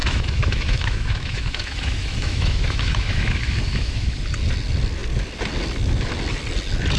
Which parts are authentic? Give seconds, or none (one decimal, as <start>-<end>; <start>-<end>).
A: 4.2-7.0